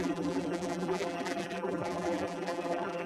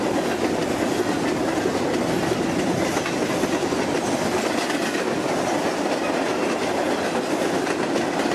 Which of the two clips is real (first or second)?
second